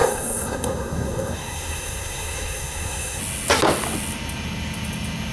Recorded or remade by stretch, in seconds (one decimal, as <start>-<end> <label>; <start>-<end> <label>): 0.0-3.2 remade; 3.2-5.3 recorded